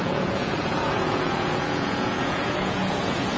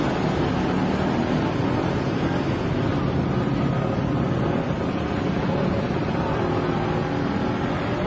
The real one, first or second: second